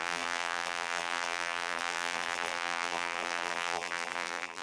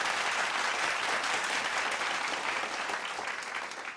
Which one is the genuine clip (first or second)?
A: second